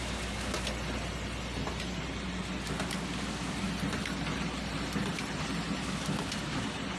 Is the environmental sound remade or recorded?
recorded